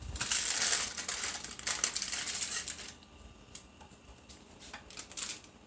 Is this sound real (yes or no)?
yes